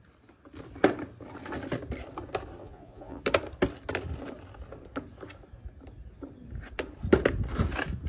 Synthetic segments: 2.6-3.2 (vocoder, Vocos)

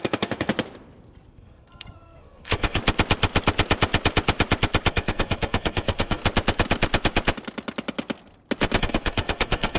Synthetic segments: 0.0-0.5 (codec, SNAC); 1.3-2.8; 4.9-6.2; 8.8-9.8